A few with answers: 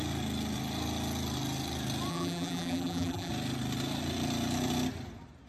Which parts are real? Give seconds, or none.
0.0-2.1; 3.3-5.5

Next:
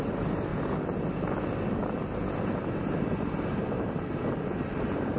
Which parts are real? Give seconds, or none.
0.5-3.0